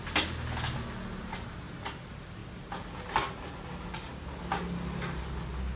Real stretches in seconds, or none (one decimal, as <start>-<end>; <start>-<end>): 0.0-2.4; 5.2-5.8